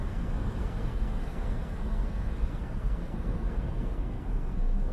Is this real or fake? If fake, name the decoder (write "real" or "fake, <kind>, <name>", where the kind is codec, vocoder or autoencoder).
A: fake, codec, SNAC